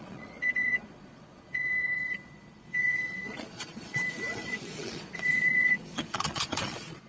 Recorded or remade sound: remade